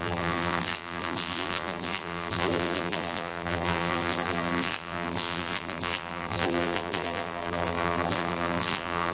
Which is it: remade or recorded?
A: remade